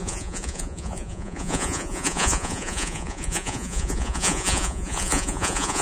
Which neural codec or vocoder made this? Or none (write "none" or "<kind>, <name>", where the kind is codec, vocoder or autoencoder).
vocoder, Vocos